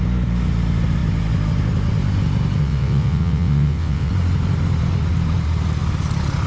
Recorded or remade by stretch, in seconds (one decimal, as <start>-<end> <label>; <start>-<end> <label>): 0.0-2.6 recorded; 2.6-4.1 remade; 4.1-6.5 recorded